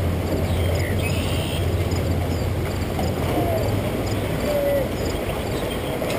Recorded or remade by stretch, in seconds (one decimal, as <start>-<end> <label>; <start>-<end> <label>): 0.0-1.6 recorded; 1.6-2.4 remade; 2.4-6.2 recorded

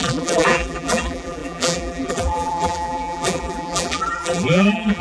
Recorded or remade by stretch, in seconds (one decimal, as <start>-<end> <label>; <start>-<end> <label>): 0.0-5.0 remade

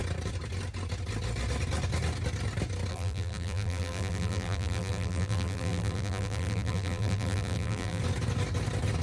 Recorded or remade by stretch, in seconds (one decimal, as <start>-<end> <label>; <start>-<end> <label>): 0.0-2.9 recorded; 2.9-8.0 remade; 8.0-9.0 recorded

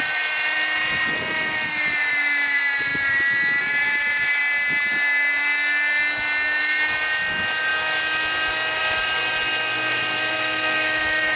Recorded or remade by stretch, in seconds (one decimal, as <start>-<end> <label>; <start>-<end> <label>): 0.0-2.9 remade; 2.9-3.6 recorded; 3.6-4.4 remade; 4.4-6.6 recorded; 6.6-7.7 remade; 7.7-8.8 recorded; 8.8-11.4 remade

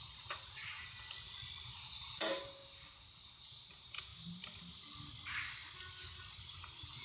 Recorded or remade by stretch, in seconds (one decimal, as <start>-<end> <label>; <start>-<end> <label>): 0.0-0.8 remade; 0.8-1.6 recorded; 1.6-2.6 remade; 2.6-3.4 recorded; 3.4-4.1 remade; 4.1-6.4 recorded; 6.4-7.0 remade

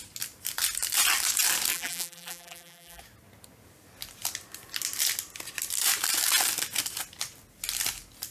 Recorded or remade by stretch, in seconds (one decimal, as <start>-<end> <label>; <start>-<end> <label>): 0.0-1.7 recorded; 1.7-3.0 remade; 3.0-8.3 recorded

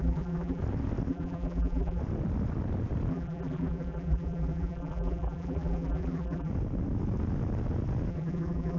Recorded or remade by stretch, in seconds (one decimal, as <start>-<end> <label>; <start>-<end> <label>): 0.0-0.6 remade; 0.6-1.1 recorded; 1.1-2.0 remade; 2.0-3.1 recorded; 3.1-6.5 remade; 6.5-8.1 recorded; 8.1-8.8 remade